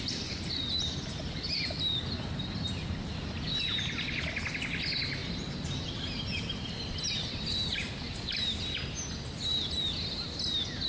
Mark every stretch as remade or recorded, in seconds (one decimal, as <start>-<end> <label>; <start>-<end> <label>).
0.0-7.8 recorded; 7.8-8.5 remade; 8.5-10.9 recorded